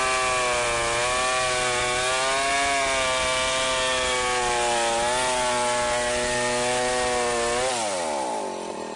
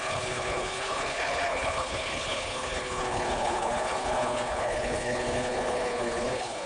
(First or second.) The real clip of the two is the first